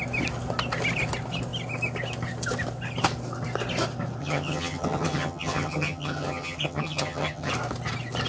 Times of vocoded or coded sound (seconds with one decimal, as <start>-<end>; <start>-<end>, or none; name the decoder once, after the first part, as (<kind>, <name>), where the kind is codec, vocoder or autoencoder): 4.2-7.5 (vocoder, HiFi-GAN)